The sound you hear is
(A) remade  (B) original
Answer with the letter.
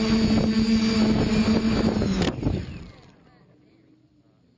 B